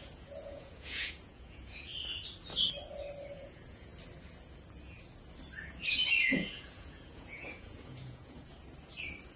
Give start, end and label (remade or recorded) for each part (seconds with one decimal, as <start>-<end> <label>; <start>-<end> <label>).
0.0-1.9 remade; 1.9-3.3 recorded; 3.3-3.9 remade; 3.9-6.2 recorded; 6.2-8.6 remade; 8.6-9.4 recorded